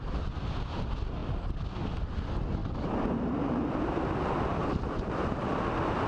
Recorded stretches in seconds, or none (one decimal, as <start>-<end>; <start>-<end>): 0.0-6.1